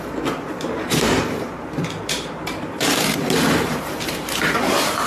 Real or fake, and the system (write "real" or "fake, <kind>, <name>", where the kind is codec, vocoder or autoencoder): fake, vocoder, BigVGAN v2